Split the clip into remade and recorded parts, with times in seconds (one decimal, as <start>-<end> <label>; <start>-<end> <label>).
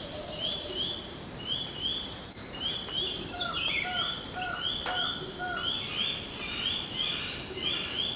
0.0-1.9 recorded; 1.9-3.7 remade; 3.7-8.2 recorded